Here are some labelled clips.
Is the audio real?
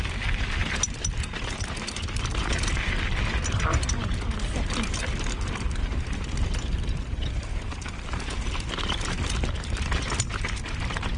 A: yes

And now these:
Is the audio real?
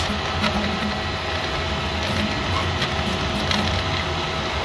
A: yes